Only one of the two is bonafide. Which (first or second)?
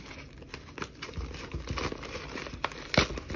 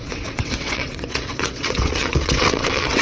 first